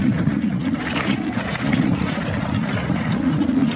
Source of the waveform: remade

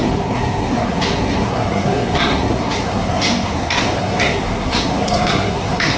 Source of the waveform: remade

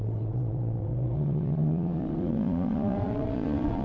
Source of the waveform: remade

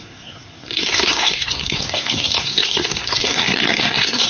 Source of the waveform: remade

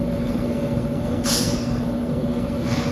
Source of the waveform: remade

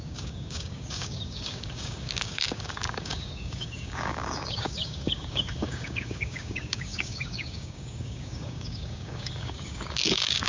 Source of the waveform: remade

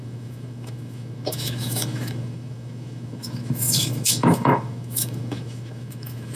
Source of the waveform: remade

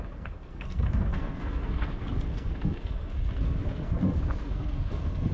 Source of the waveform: remade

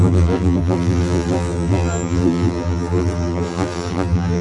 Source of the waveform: remade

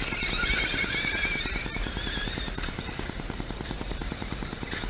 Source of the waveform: remade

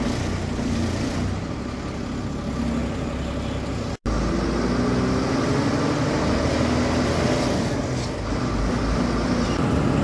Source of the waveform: recorded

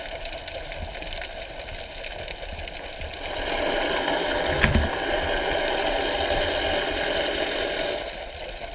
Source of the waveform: recorded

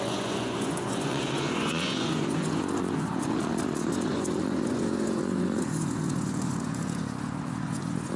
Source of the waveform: remade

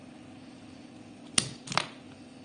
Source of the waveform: recorded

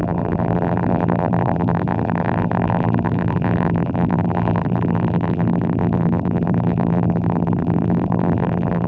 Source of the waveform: remade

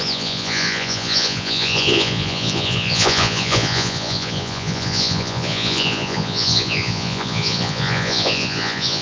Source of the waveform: remade